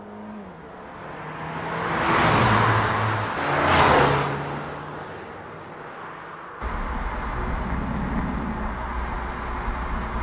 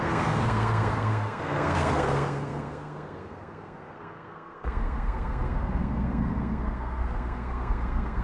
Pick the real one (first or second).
first